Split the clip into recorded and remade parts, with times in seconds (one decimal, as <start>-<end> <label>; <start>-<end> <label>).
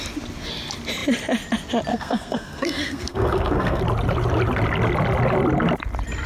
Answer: 0.0-1.9 recorded; 1.9-3.8 remade; 3.8-6.3 recorded